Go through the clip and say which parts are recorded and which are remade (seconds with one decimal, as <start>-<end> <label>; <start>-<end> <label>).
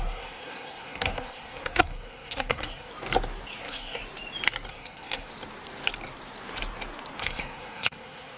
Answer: 0.0-2.9 remade; 2.9-3.6 recorded; 3.6-4.0 remade; 4.0-4.7 recorded; 4.7-5.3 remade; 5.3-7.2 recorded; 7.2-8.4 remade